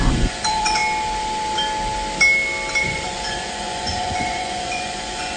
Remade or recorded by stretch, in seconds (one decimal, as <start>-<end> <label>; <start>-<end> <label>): 0.0-0.8 remade; 0.8-2.8 recorded; 2.8-5.4 remade